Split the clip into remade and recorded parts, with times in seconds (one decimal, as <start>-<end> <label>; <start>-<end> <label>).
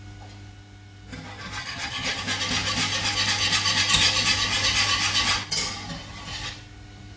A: 0.0-1.6 recorded; 1.6-2.2 remade; 2.2-7.2 recorded